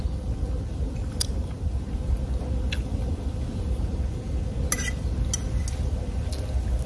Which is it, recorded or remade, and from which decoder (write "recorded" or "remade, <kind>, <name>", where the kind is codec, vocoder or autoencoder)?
recorded